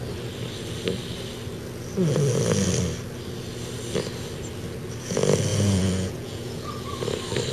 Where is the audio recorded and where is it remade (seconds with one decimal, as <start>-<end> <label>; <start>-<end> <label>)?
0.0-5.5 recorded; 5.5-6.7 remade; 6.7-7.5 recorded